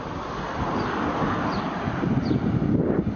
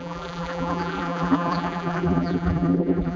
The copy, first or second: second